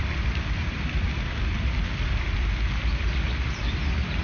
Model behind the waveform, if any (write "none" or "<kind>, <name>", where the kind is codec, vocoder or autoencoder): vocoder, BigVGAN v2